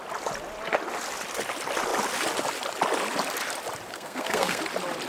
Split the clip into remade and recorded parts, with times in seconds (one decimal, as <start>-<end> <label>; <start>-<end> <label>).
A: 0.0-3.9 recorded; 3.9-4.6 remade; 4.6-5.1 recorded

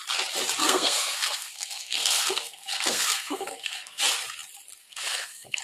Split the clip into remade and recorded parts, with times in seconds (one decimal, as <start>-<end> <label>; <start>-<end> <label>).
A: 0.0-0.6 recorded; 0.6-4.0 remade; 4.0-4.8 recorded; 4.8-5.6 remade